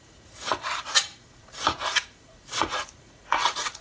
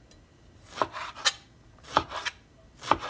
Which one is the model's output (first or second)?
first